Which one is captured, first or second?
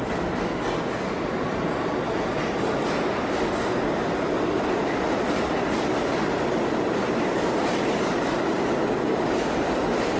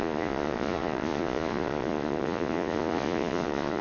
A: first